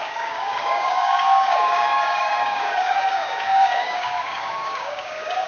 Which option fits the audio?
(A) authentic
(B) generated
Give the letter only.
B